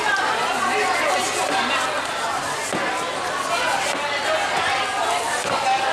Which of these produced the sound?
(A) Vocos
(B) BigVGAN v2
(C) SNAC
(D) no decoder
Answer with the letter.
D